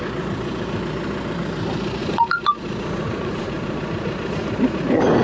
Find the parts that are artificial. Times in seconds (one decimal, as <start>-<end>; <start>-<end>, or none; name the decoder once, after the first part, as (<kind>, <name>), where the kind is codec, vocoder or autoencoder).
2.0-4.8 (vocoder, Vocos)